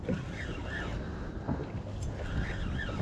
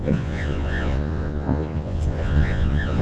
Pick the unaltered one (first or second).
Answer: first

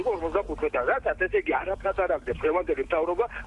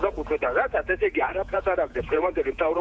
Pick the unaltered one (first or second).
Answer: first